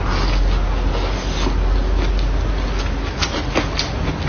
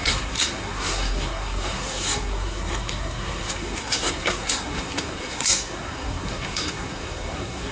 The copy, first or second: second